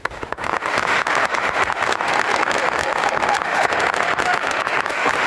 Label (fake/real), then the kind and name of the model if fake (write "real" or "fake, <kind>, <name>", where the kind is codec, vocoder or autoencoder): fake, autoencoder, DAC-VAE